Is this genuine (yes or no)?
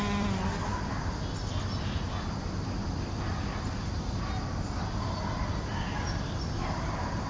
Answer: yes